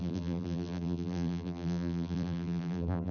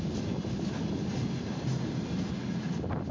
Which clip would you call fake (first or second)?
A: first